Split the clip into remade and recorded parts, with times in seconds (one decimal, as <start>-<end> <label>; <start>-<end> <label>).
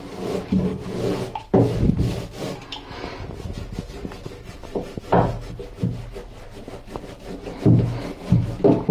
0.0-0.7 recorded; 0.7-1.4 remade; 1.4-8.9 recorded